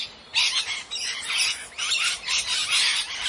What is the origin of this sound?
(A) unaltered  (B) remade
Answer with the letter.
A